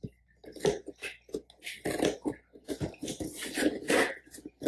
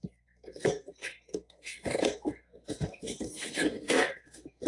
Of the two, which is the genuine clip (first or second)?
first